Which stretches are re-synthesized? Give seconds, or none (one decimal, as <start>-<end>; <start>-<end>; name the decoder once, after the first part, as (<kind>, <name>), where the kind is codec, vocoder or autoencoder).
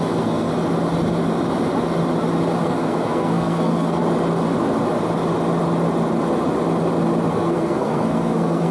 0.0-0.5 (codec, SNAC); 2.6-4.0; 7.3-8.7